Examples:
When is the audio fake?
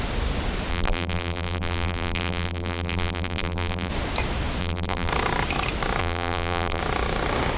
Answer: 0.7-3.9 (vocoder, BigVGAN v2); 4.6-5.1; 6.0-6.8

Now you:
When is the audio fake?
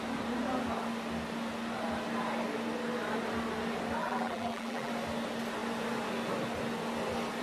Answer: 4.0-4.9 (vocoder, BigVGAN v2)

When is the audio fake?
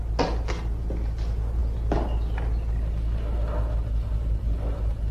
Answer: none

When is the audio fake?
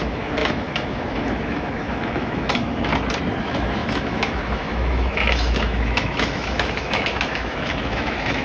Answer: 0.0-2.9 (autoencoder, DAC-VAE); 3.4-8.4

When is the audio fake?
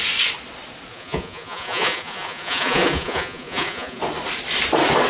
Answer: 0.9-4.0 (vocoder, Vocos)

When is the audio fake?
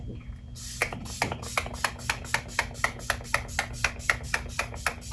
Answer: none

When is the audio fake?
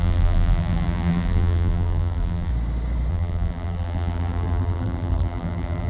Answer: 0.0-2.5 (vocoder, BigVGAN v2); 3.1-5.9